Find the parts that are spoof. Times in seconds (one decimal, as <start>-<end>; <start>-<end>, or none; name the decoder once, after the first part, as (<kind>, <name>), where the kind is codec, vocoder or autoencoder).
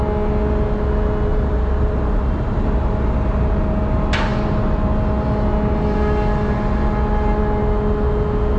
1.3-3.6 (vocoder, BigVGAN v2)